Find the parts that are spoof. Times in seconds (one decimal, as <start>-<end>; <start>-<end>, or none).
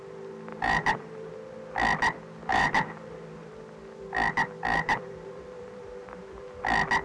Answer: 0.5-1.3; 2.5-3.5; 4.7-6.6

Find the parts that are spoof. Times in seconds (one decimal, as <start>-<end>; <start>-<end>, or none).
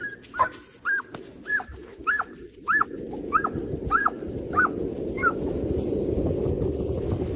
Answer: none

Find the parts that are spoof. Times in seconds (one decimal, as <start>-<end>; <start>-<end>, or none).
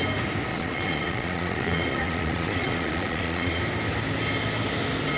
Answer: 0.5-3.6